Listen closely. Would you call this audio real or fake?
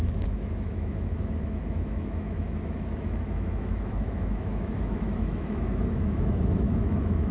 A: fake